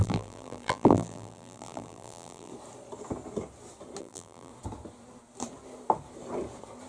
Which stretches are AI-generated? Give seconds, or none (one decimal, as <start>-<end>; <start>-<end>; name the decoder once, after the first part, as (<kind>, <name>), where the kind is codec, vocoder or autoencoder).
0.0-2.5 (vocoder, BigVGAN v2); 4.0-4.5